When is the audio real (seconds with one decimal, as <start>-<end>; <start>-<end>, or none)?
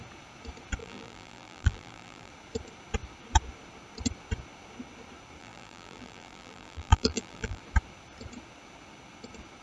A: 0.0-0.8; 2.3-5.4; 7.6-9.6